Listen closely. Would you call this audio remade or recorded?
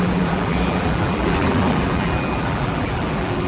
remade